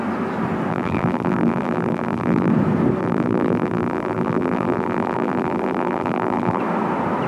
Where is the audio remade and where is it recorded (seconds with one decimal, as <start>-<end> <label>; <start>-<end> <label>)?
0.0-0.7 recorded; 0.7-2.5 remade; 2.5-3.0 recorded; 3.0-6.6 remade; 6.6-7.3 recorded